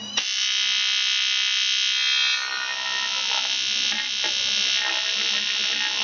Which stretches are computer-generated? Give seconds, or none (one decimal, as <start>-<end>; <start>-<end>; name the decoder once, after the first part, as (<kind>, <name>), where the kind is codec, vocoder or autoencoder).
none